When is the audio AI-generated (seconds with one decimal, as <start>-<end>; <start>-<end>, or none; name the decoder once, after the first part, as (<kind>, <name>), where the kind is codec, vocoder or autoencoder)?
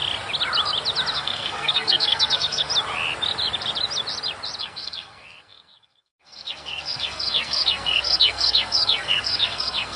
1.1-2.7 (codec, SNAC); 4.6-10.0